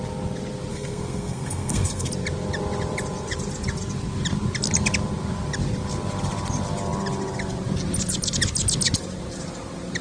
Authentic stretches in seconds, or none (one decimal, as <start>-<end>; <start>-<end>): 0.0-0.7; 2.1-10.0